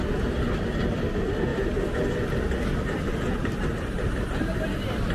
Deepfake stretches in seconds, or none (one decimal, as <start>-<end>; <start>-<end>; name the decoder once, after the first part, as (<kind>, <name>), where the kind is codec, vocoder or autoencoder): 0.0-1.5 (vocoder, BigVGAN v2); 3.8-5.1